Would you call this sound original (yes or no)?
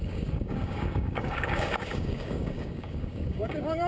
no